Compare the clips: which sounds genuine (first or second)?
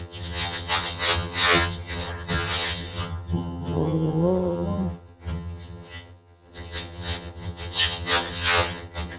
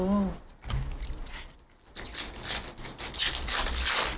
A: second